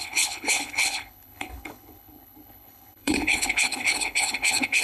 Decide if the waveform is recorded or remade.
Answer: remade